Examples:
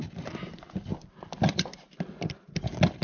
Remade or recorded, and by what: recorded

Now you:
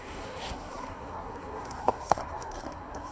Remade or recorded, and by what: remade, codec, SNAC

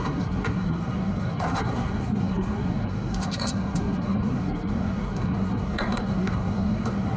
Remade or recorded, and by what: remade, codec, SNAC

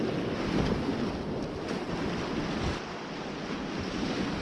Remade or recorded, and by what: recorded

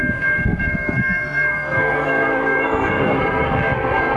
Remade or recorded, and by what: remade, codec, SNAC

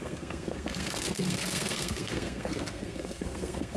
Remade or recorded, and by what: remade, codec, SNAC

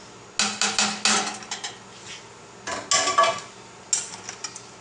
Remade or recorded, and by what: recorded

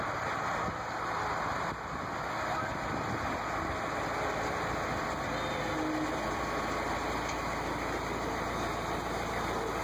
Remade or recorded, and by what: recorded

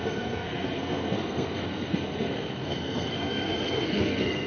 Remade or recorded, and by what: remade, codec, SNAC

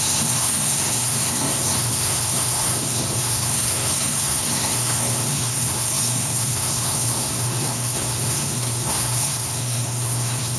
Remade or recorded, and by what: remade, codec, SNAC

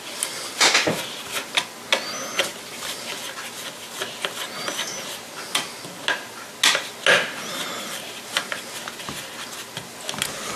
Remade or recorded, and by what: recorded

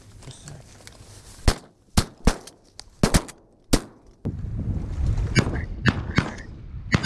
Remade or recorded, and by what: recorded